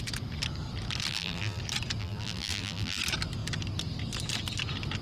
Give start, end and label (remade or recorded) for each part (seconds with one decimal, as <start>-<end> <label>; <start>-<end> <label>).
0.0-1.1 recorded; 1.1-1.6 remade; 1.6-2.0 recorded; 2.0-3.0 remade; 3.0-5.0 recorded